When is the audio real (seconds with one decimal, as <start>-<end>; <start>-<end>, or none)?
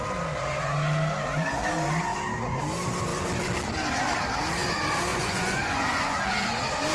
0.0-5.1; 6.2-6.9